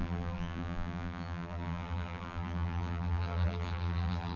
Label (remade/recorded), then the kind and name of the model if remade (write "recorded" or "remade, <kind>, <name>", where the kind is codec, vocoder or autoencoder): remade, vocoder, BigVGAN v2